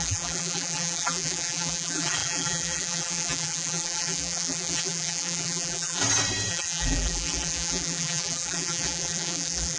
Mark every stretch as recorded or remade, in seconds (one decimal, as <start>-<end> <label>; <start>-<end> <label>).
0.0-6.0 remade; 6.0-6.5 recorded; 6.5-9.8 remade